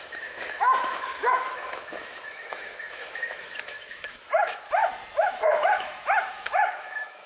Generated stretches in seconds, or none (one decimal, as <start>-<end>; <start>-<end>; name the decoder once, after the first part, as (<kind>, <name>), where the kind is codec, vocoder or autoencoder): 0.0-4.8 (autoencoder, DAC-VAE); 5.3-7.3